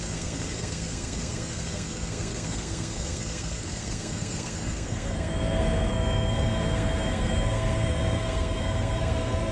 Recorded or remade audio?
remade